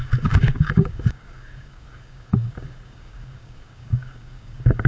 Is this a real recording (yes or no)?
no